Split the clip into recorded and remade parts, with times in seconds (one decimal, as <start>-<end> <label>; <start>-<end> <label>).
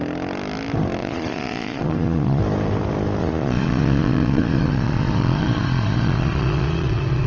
0.0-1.0 recorded; 1.0-2.4 remade; 2.4-3.2 recorded; 3.2-7.3 remade